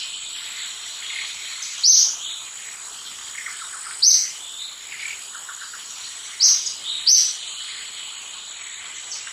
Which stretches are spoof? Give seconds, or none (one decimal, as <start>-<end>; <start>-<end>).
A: none